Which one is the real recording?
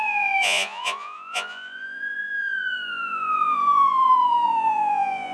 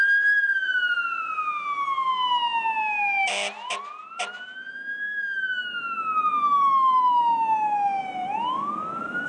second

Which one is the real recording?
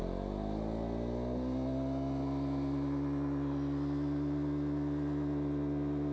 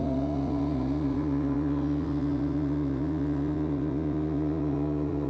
first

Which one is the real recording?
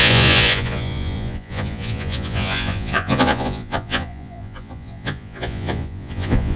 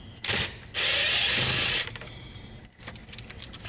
second